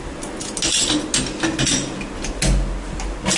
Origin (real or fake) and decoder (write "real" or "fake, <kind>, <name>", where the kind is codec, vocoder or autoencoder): real